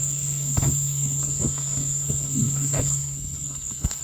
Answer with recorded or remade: remade